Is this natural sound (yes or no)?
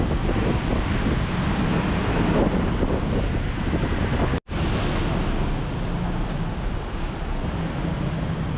yes